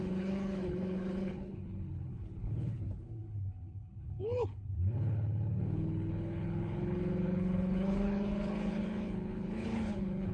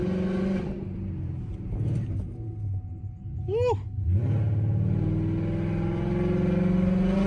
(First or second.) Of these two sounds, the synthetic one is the first